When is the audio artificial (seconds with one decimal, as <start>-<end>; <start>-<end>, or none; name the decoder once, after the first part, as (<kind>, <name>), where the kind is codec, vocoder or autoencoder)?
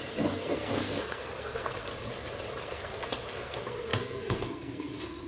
0.0-1.9 (codec, SNAC); 2.6-5.3